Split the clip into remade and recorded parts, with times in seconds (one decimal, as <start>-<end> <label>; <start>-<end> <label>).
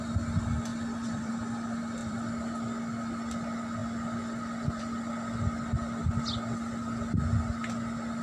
0.0-0.7 recorded; 0.7-1.3 remade; 1.3-2.0 recorded; 2.0-2.8 remade; 2.8-3.8 recorded; 3.8-4.8 remade; 4.8-8.2 recorded